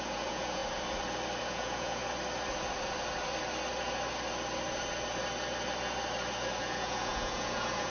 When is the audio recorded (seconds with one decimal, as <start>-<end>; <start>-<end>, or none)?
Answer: 0.6-1.4; 2.0-6.6